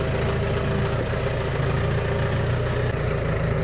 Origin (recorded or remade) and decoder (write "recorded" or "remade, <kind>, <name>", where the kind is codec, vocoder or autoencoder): recorded